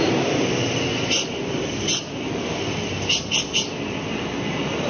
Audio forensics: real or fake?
real